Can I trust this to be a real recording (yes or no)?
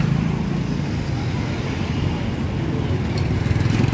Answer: yes